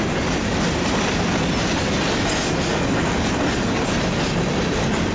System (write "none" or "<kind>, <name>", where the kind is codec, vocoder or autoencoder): none